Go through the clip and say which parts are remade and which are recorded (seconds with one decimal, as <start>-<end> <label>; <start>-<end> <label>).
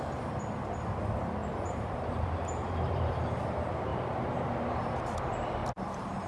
0.0-1.4 recorded; 1.4-3.1 remade; 3.1-3.9 recorded; 3.9-5.0 remade; 5.0-5.6 recorded; 5.6-6.3 remade